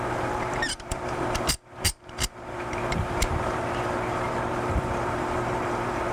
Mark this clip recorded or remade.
remade